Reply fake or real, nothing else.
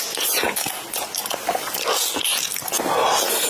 real